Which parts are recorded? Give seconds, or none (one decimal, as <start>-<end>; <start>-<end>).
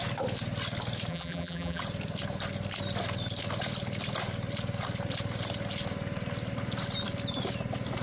0.0-1.1; 1.8-8.0